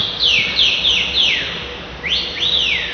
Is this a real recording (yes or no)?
yes